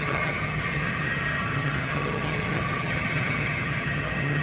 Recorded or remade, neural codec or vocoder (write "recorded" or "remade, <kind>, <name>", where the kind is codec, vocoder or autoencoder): remade, vocoder, HiFi-GAN